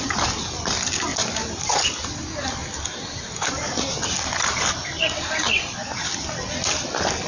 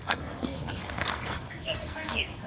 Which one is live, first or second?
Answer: first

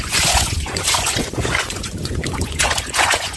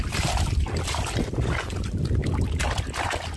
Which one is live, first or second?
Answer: second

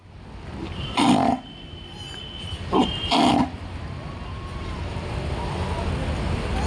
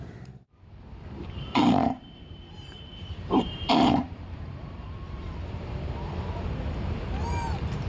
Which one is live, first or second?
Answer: first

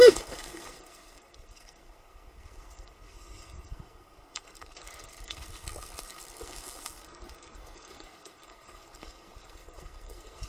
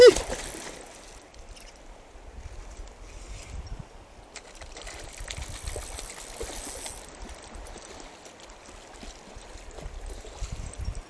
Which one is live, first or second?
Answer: second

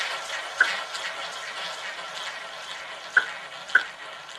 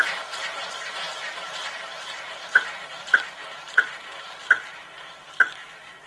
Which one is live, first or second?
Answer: first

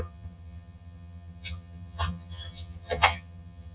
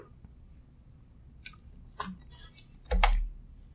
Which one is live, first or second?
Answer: second